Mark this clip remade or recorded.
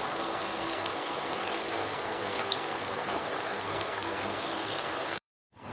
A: remade